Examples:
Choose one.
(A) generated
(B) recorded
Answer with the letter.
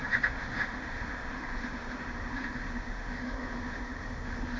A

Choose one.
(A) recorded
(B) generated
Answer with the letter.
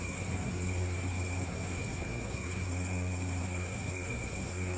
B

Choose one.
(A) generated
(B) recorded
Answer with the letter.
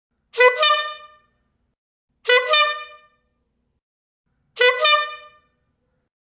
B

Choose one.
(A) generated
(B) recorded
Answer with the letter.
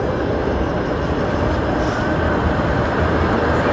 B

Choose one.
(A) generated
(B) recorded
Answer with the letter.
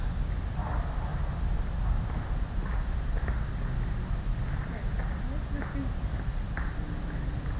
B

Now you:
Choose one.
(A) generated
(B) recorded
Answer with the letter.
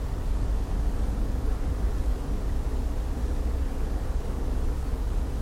A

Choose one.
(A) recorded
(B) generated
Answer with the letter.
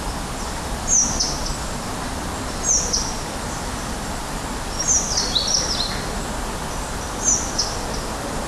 A